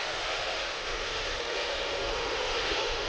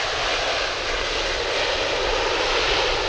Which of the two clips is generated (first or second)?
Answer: first